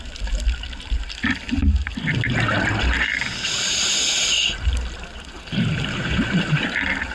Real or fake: real